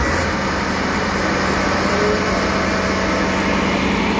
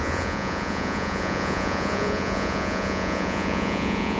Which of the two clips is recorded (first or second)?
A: first